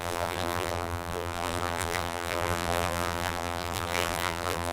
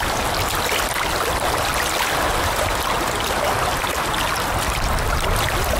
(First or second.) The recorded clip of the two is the second